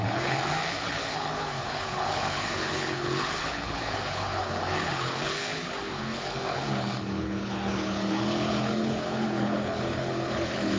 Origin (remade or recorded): remade